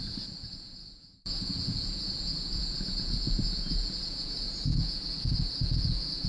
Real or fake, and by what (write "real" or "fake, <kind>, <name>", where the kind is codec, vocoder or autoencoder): fake, vocoder, Vocos